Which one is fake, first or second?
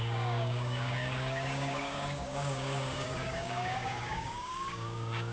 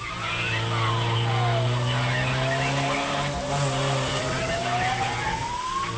first